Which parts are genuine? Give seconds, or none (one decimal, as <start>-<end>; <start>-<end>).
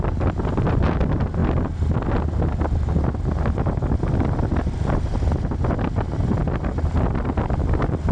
0.0-8.1